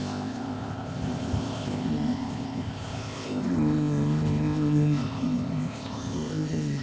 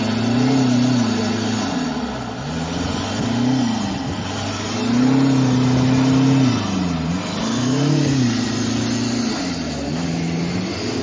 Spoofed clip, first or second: first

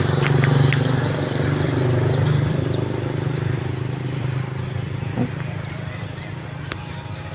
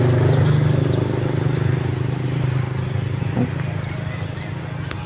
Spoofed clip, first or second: first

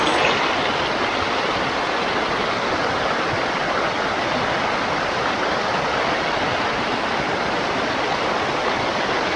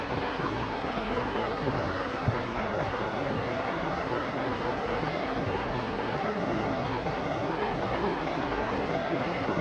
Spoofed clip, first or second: second